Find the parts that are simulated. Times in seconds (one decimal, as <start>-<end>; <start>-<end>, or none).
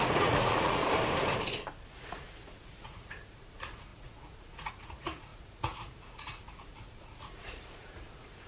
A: 0.0-0.8; 1.9-8.5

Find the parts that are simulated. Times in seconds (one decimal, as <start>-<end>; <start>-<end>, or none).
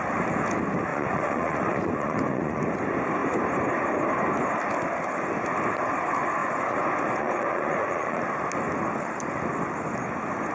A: 0.9-2.6; 6.4-8.2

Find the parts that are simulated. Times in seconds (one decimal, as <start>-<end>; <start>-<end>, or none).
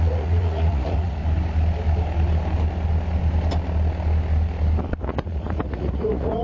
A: 0.0-1.2; 5.0-6.4